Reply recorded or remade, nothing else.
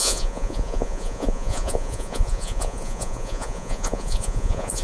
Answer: remade